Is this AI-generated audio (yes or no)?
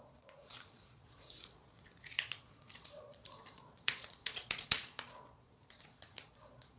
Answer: yes